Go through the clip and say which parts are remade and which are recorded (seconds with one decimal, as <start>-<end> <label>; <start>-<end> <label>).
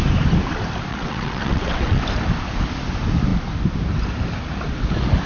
0.0-0.9 recorded; 0.9-2.0 remade; 2.0-5.3 recorded